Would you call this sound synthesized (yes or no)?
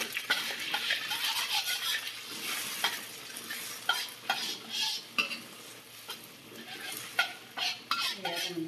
no